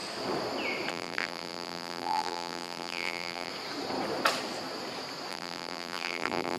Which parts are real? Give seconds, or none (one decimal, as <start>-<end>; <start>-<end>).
0.0-0.9; 3.5-5.3